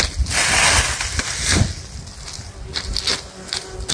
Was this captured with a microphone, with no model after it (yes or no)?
yes